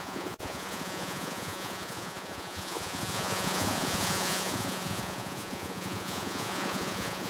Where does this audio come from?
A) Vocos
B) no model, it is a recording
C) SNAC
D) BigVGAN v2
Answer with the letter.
A